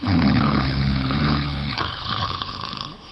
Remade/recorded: remade